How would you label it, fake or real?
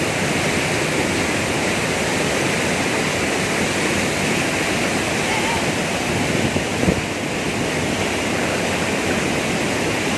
real